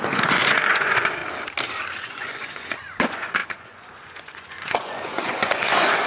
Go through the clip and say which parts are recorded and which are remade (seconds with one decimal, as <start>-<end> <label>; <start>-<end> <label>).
0.0-1.2 remade; 1.2-2.0 recorded; 2.0-6.1 remade